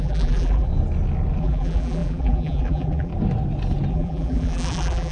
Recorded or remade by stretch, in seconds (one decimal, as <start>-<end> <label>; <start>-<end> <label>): 0.0-0.7 remade; 0.7-1.4 recorded; 1.4-3.1 remade; 3.1-3.9 recorded; 3.9-5.1 remade